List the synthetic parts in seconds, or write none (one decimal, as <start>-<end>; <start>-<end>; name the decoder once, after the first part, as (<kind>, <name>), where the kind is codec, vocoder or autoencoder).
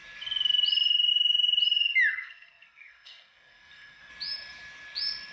2.1-4.1 (codec, SNAC)